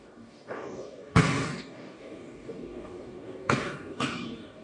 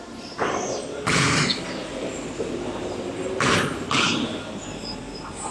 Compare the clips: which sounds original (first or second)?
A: second